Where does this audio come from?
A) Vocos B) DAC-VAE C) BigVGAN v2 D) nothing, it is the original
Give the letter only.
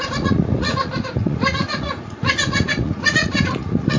A